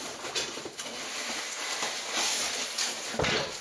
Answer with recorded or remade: recorded